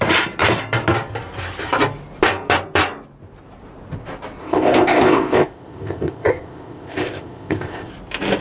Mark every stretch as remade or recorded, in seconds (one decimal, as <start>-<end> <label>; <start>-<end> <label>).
0.0-4.4 recorded; 4.4-7.9 remade; 7.9-8.4 recorded